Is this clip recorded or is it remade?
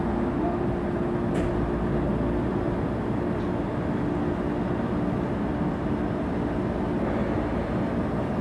recorded